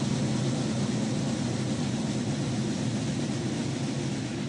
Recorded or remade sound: recorded